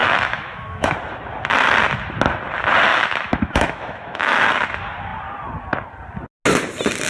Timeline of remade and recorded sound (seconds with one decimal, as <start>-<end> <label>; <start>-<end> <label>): 0.0-0.9 remade; 0.9-2.9 recorded; 2.9-4.4 remade; 4.4-7.1 recorded